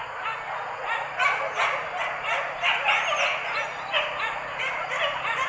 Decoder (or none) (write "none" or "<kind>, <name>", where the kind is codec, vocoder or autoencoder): none